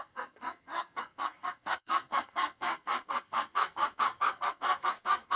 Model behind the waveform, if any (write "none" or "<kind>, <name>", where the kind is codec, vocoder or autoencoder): codec, SNAC